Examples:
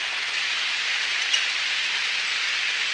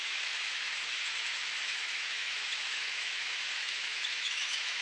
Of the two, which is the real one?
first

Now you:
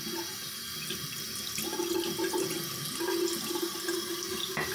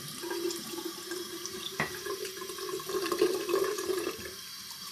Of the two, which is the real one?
first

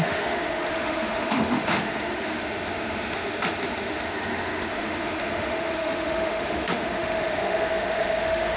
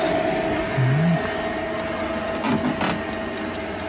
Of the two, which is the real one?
second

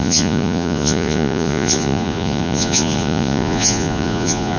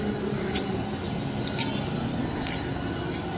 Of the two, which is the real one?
second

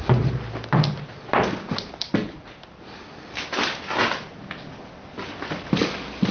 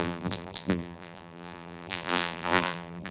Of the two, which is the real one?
first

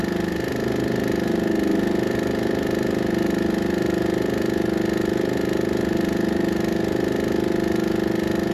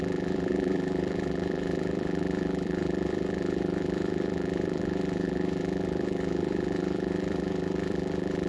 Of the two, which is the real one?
first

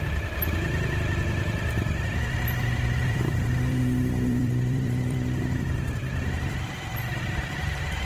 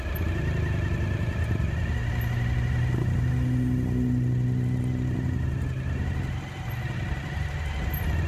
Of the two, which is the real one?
second